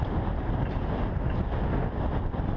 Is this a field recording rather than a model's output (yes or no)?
yes